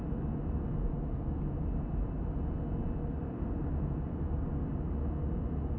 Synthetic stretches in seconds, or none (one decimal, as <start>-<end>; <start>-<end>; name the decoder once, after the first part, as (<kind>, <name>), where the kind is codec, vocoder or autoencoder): none